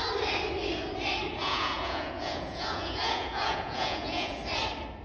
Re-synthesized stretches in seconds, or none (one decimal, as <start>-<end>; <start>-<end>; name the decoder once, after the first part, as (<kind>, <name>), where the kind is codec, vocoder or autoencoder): 1.4-4.4 (vocoder, Vocos)